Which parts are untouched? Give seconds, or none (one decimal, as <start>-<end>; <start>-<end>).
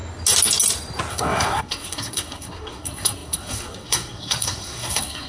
0.0-1.1